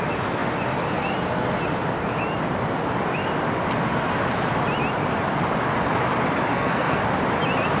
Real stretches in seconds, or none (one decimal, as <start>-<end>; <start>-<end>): 0.0-6.5; 7.0-7.8